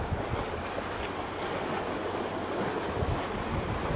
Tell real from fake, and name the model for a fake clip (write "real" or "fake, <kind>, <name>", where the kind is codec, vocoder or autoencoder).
real